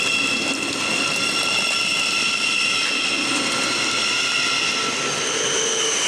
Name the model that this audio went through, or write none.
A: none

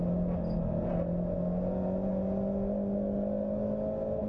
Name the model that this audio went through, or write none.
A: none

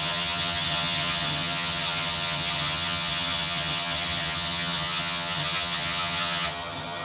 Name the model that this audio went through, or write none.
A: vocoder, HiFi-GAN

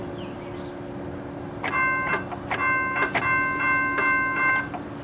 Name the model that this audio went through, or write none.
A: none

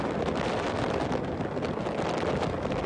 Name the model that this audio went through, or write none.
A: none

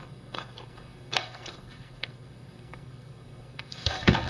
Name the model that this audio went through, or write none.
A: codec, SNAC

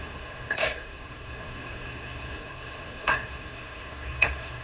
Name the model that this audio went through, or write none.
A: codec, SNAC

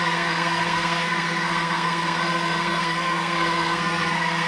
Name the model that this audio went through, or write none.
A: codec, SNAC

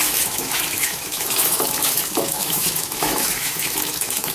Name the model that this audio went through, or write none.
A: autoencoder, DAC-VAE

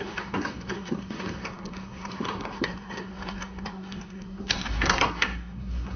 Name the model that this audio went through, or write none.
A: codec, SNAC